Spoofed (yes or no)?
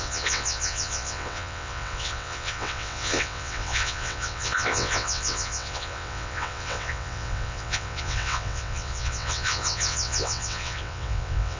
yes